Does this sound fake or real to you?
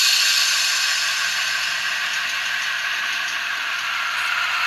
fake